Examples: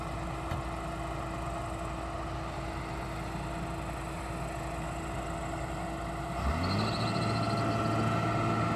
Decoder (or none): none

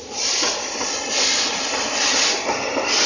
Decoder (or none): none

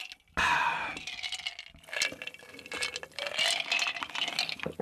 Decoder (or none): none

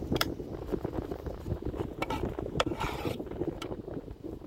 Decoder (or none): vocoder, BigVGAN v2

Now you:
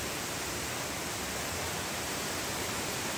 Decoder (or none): vocoder, BigVGAN v2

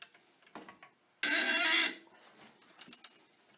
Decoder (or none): none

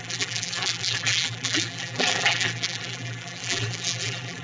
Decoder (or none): vocoder, BigVGAN v2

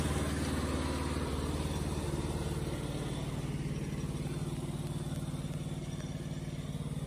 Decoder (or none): none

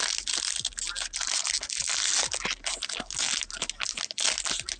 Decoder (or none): none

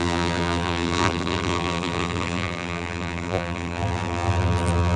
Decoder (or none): vocoder, BigVGAN v2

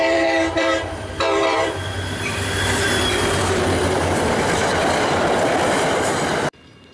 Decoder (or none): vocoder, BigVGAN v2